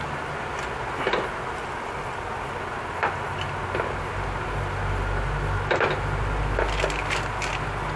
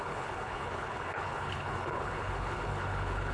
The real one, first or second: first